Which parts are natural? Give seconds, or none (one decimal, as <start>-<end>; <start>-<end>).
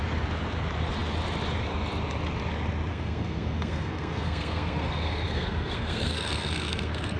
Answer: 0.0-2.9